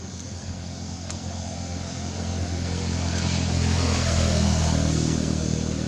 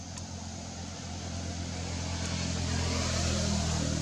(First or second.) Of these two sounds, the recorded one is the second